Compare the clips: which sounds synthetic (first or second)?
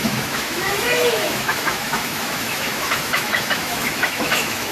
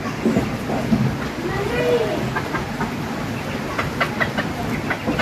first